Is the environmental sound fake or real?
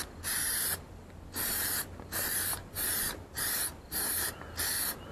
real